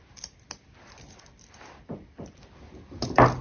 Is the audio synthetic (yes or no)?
no